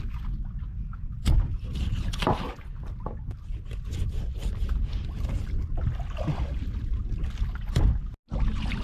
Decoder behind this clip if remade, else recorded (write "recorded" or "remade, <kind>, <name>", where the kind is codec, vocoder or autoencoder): recorded